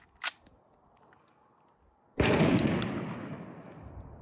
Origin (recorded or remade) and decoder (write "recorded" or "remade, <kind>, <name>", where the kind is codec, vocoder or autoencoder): recorded